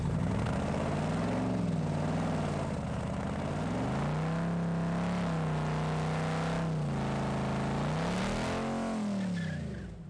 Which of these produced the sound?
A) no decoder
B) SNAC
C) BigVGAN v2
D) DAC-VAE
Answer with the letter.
A